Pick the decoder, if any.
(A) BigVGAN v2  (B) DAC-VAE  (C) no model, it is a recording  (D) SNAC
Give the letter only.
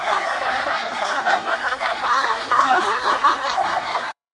D